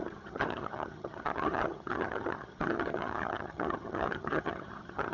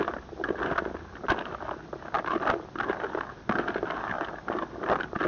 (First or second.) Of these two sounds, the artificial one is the first